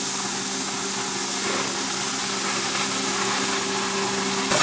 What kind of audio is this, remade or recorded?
recorded